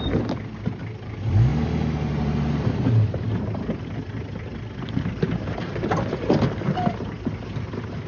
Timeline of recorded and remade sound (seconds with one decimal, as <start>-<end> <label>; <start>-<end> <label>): 0.0-8.1 recorded